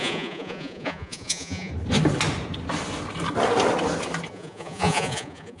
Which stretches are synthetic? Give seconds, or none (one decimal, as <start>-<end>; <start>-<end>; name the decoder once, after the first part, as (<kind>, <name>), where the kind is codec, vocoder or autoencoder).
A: 0.0-1.7 (vocoder, Vocos); 4.3-5.6